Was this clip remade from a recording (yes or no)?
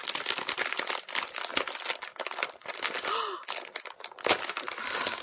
no